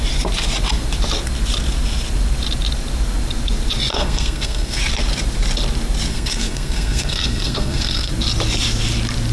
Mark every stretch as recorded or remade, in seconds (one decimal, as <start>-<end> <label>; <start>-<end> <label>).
0.0-3.9 recorded; 3.9-4.8 remade; 4.8-6.1 recorded; 6.1-8.1 remade; 8.1-9.3 recorded